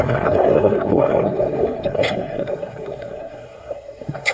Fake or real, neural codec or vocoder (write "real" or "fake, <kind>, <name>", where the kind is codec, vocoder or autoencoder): fake, codec, SNAC